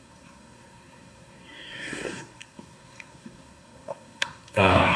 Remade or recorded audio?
remade